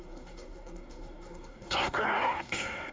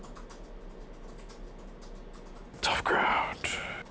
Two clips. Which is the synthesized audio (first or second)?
first